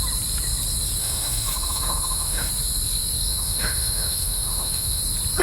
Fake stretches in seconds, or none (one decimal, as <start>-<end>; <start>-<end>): 1.0-2.5; 3.3-5.0